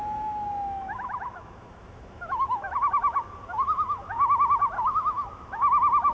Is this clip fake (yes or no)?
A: yes